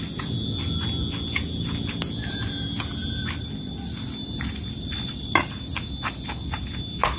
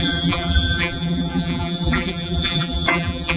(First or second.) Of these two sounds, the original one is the first